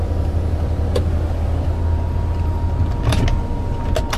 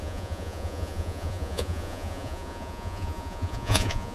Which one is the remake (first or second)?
second